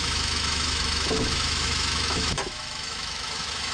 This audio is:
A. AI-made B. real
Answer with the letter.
A